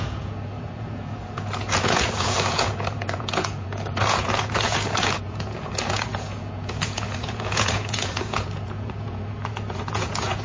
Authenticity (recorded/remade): remade